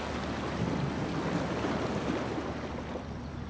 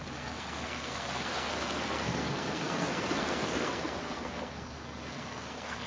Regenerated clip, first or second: second